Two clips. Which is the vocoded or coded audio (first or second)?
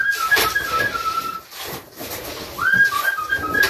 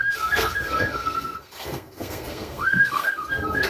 second